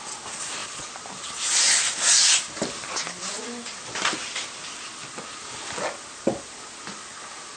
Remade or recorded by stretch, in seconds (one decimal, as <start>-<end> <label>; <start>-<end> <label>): 0.0-0.6 recorded; 0.6-5.2 remade; 5.2-7.6 recorded